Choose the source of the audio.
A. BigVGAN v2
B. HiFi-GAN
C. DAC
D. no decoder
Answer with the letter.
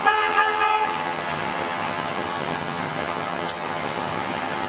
B